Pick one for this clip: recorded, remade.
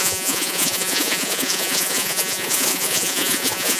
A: remade